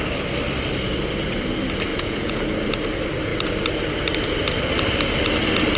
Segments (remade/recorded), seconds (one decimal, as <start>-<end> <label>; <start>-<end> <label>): 0.0-1.9 recorded; 1.9-2.4 remade; 2.4-5.8 recorded